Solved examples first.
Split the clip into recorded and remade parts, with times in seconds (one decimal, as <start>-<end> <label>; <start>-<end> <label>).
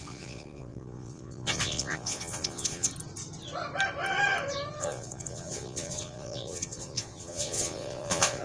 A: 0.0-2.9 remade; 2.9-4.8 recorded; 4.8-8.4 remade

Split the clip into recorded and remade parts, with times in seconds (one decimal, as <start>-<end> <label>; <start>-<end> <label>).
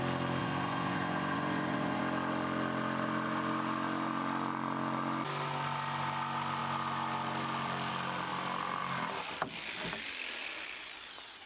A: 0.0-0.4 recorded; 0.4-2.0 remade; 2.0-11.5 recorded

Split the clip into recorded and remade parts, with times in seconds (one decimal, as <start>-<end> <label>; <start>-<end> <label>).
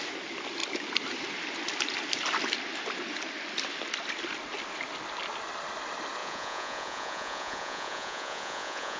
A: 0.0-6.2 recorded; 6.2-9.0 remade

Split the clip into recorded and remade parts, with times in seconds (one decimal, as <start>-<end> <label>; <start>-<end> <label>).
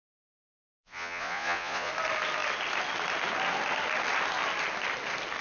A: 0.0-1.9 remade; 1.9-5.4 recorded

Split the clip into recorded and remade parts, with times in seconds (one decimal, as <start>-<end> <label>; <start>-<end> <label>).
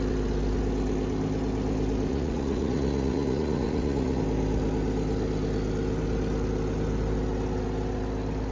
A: 0.0-2.1 recorded; 2.1-4.2 remade; 4.2-8.5 recorded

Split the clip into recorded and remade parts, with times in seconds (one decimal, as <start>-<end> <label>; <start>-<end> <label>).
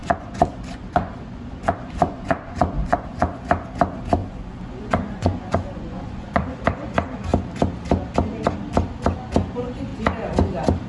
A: 0.0-3.4 remade; 3.4-4.2 recorded; 4.2-6.6 remade; 6.6-10.9 recorded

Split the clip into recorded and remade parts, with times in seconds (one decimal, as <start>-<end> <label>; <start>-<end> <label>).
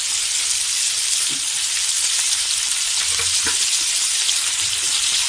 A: 0.0-5.3 recorded